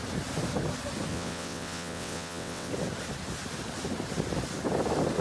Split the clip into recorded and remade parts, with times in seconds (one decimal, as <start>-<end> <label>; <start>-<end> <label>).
0.0-1.1 recorded; 1.1-2.7 remade; 2.7-5.2 recorded